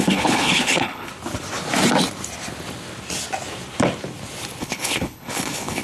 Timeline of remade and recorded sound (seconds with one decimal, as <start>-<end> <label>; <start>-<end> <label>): 0.0-1.1 remade; 1.1-4.6 recorded; 4.6-5.8 remade